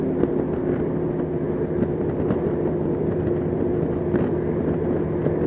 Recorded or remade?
recorded